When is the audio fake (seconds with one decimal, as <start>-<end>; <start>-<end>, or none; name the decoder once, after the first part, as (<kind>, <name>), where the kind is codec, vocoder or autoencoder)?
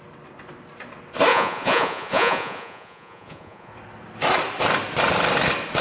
1.3-3.7 (vocoder, Vocos)